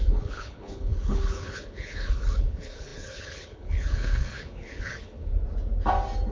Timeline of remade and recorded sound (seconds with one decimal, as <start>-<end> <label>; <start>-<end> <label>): 0.0-5.3 remade; 5.3-6.3 recorded